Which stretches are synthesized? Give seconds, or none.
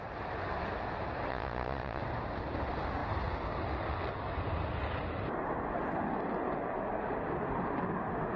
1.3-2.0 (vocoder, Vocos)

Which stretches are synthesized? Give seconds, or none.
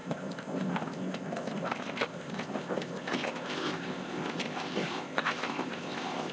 0.0-6.3 (codec, ZipCodec)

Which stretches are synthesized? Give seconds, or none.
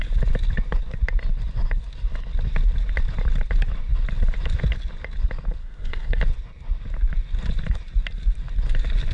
5.6-6.2 (codec, SNAC)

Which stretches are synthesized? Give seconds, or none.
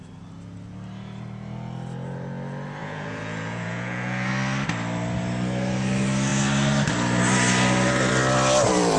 2.8-4.3 (vocoder, Vocos)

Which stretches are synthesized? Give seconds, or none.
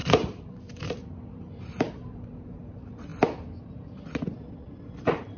0.0-3.1 (vocoder, BigVGAN v2); 5.0-5.4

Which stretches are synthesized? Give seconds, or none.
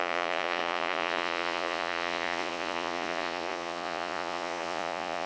0.0-5.3 (vocoder, Vocos)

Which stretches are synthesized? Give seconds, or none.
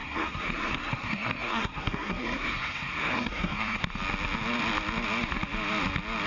0.0-3.8 (codec, SNAC)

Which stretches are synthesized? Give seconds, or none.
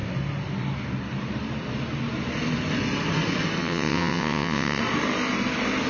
3.6-4.8 (vocoder, WaveNeXt)